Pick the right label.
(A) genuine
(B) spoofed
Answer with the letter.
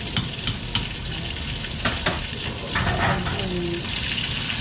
A